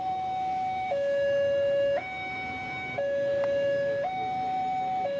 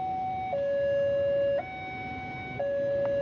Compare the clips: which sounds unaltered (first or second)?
second